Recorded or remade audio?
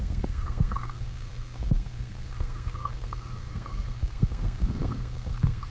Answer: remade